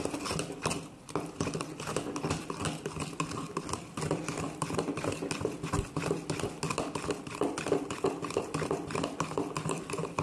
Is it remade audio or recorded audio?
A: recorded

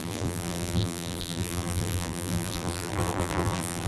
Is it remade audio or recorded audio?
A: remade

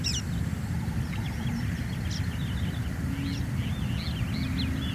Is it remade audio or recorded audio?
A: recorded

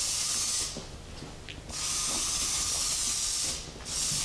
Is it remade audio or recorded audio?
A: recorded